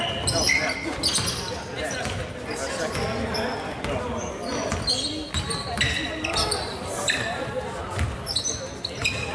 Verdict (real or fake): real